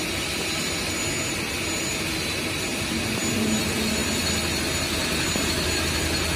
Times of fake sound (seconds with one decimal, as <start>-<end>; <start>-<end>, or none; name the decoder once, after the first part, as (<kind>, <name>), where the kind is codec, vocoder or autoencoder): none